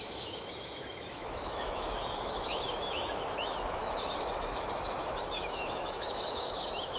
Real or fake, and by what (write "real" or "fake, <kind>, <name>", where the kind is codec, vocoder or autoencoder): fake, autoencoder, DAC-VAE